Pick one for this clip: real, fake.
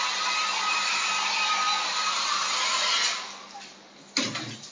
real